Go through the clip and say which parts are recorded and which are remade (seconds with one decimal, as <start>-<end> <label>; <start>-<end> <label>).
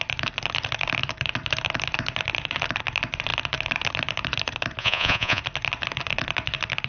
0.0-4.8 recorded; 4.8-5.4 remade; 5.4-6.9 recorded